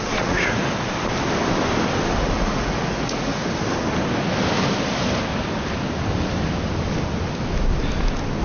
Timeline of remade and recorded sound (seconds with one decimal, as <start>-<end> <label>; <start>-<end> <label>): 0.0-0.6 remade; 0.6-2.2 recorded; 2.2-3.4 remade; 3.4-8.4 recorded